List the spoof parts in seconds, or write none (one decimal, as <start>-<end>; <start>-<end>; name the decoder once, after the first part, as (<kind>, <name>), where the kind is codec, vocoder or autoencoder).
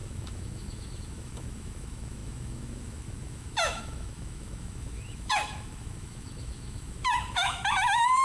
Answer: 0.0-8.2 (autoencoder, DAC-VAE)